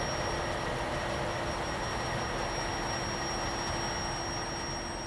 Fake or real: real